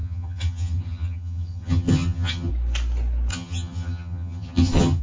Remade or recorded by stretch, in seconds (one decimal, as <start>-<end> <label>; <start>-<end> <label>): 0.0-2.5 remade; 2.5-3.3 recorded; 3.3-5.0 remade